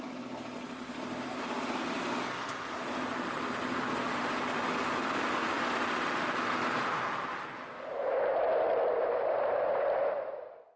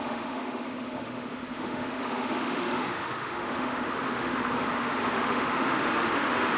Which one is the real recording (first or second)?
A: first